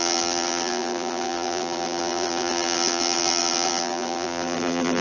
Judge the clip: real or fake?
fake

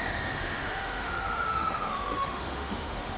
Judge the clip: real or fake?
fake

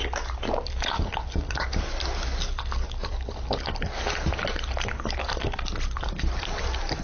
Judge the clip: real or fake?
real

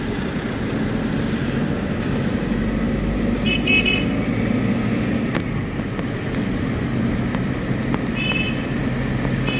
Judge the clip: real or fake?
real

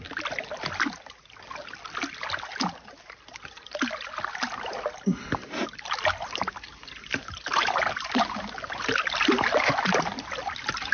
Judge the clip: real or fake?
real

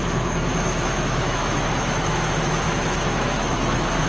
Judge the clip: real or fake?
fake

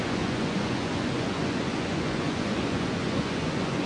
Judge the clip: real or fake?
fake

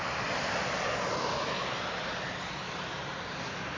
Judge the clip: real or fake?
real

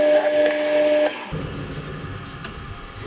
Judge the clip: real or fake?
real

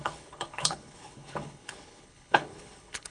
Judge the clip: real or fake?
fake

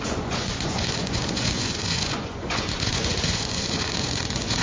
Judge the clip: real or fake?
fake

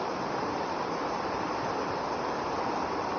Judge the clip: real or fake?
real